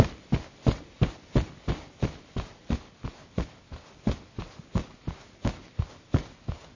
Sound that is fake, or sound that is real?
real